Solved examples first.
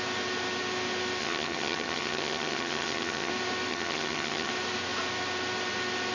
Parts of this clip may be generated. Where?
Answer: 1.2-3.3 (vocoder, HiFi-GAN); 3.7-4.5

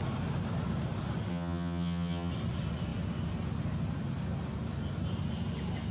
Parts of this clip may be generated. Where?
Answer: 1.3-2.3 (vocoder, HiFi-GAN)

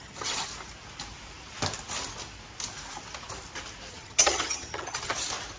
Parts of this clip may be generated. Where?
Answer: 0.0-0.5 (vocoder, HiFi-GAN); 3.9-5.1

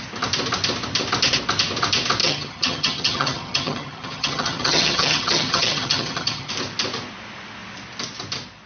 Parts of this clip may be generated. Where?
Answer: 2.2-6.5 (vocoder, HiFi-GAN)

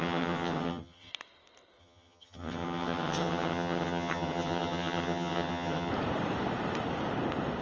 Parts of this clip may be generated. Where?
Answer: 0.0-1.1 (vocoder, HiFi-GAN); 1.8-5.9

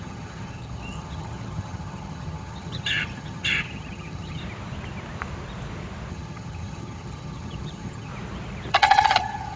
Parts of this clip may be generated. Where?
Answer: 0.0-4.4 (vocoder, HiFi-GAN); 6.1-8.1; 8.7-9.6

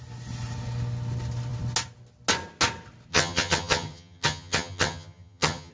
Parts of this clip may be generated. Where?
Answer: 3.1-5.7 (vocoder, HiFi-GAN)